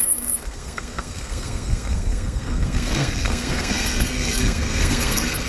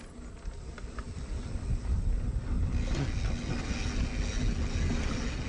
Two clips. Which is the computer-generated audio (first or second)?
first